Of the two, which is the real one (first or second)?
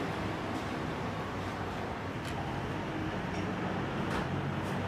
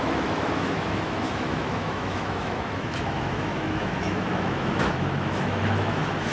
first